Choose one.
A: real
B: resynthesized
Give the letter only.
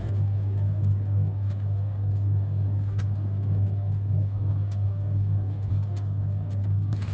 B